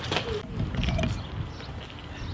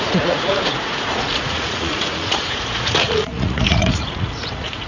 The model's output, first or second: second